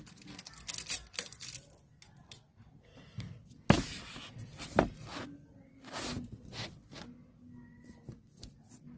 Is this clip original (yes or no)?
yes